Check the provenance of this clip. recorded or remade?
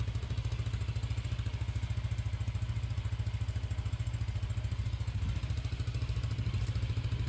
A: recorded